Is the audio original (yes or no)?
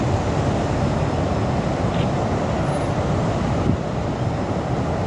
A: yes